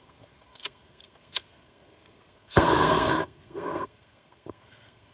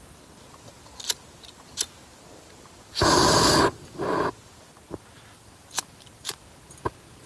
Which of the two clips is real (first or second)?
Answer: second